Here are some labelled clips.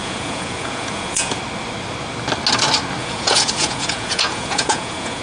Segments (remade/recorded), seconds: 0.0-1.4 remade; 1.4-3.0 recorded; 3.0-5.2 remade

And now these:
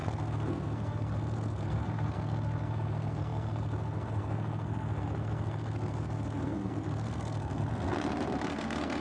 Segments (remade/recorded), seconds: 0.0-7.6 remade; 7.6-8.4 recorded; 8.4-9.0 remade

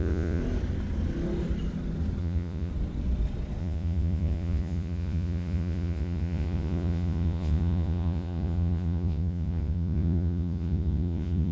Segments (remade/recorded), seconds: 0.0-0.4 remade; 0.4-2.2 recorded; 2.2-2.7 remade; 2.7-3.6 recorded; 3.6-11.5 remade

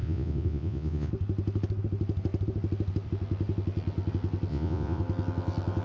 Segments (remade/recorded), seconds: 0.0-1.1 remade; 1.1-4.5 recorded; 4.5-5.0 remade; 5.0-5.8 recorded

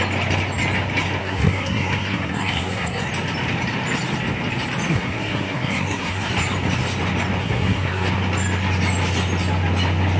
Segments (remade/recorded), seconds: 0.0-1.2 recorded; 1.2-3.1 remade; 3.1-4.9 recorded; 4.9-6.3 remade; 6.3-7.4 recorded; 7.4-8.1 remade; 8.1-10.2 recorded

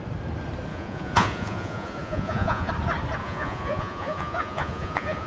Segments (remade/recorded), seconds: 0.0-0.7 recorded; 0.7-2.7 remade; 2.7-3.2 recorded; 3.2-5.3 remade

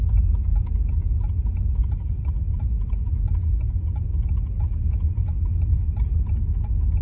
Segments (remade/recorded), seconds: 0.0-7.0 recorded

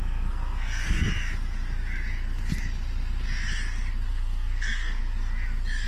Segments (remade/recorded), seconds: 0.0-1.1 remade; 1.1-4.1 recorded; 4.1-5.0 remade; 5.0-5.9 recorded